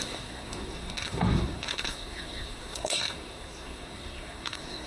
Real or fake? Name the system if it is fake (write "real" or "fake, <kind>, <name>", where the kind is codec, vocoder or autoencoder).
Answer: fake, codec, SNAC